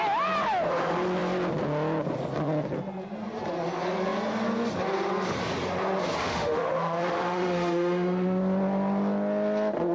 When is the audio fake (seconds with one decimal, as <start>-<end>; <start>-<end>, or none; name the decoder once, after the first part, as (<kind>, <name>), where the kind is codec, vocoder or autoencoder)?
6.2-8.4 (autoencoder, DAC-VAE)